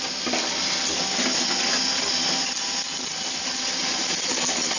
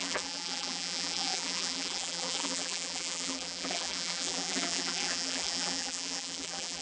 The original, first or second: first